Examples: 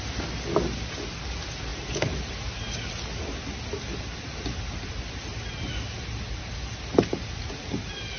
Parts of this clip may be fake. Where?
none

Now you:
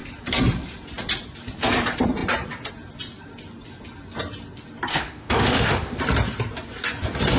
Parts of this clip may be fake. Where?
4.9-6.0 (autoencoder, DAC-VAE)

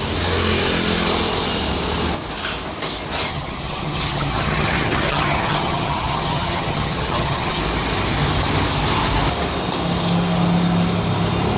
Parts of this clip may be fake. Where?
3.3-7.6 (vocoder, HiFi-GAN)

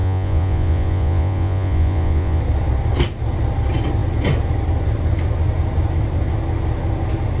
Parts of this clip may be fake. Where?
0.0-2.4 (vocoder, Vocos)

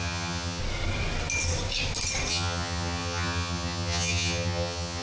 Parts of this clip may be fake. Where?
0.0-0.6 (vocoder, HiFi-GAN); 2.3-5.0